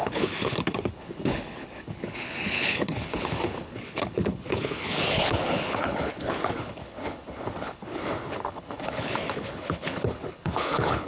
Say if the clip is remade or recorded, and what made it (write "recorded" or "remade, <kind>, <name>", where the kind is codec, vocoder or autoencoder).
remade, codec, HILCodec